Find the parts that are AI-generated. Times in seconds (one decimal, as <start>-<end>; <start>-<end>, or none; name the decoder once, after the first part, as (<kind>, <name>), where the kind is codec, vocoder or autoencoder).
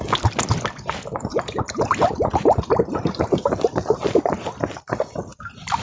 1.3-4.5 (vocoder, BigVGAN v2); 5.3-5.8